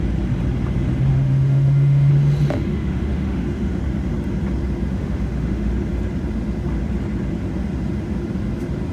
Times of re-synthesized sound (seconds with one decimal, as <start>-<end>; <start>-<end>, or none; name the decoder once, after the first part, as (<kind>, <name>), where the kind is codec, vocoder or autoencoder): 1.1-2.1 (autoencoder, DAC-VAE); 2.7-3.8; 4.9-5.7